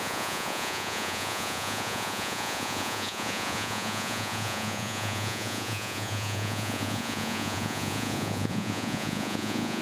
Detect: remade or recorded remade